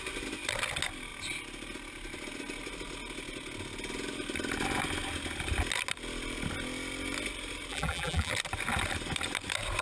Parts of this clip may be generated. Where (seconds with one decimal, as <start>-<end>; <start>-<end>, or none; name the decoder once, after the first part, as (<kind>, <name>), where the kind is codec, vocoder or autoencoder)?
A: 7.7-8.3 (vocoder, BigVGAN v2)